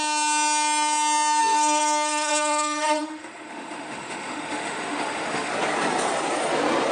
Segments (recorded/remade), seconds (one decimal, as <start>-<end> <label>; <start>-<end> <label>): 0.0-1.4 recorded; 1.4-5.5 remade; 5.5-6.9 recorded